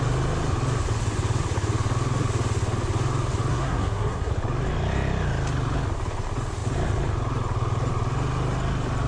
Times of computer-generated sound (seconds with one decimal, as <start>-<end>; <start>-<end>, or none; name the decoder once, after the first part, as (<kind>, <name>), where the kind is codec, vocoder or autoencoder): 3.5-4.3 (codec, SNAC)